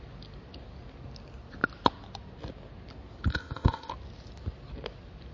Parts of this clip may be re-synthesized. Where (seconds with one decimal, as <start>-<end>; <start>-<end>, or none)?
3.3-3.9